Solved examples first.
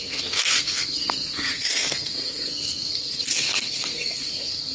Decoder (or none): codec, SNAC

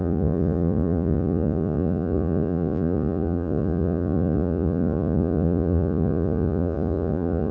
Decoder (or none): vocoder, Vocos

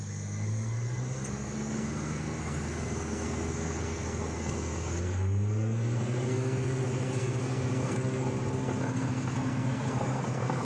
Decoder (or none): codec, SNAC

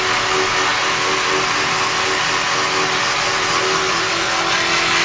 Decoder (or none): none